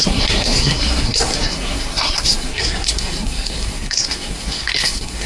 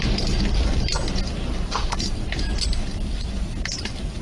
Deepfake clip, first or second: first